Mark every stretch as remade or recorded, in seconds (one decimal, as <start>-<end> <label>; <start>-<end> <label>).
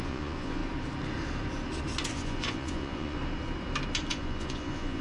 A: 0.0-0.6 remade; 0.6-2.1 recorded; 2.1-3.2 remade; 3.2-4.1 recorded; 4.1-5.0 remade